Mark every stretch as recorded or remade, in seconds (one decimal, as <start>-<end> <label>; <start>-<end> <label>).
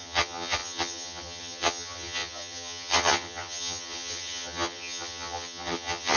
0.0-6.2 remade